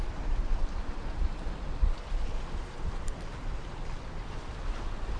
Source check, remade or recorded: recorded